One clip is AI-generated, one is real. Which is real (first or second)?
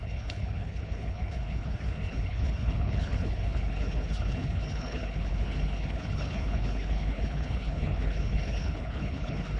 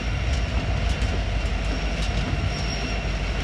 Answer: second